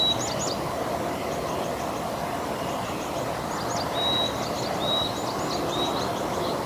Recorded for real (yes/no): yes